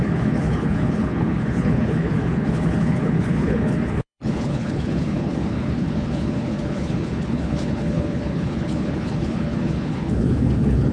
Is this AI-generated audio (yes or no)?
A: yes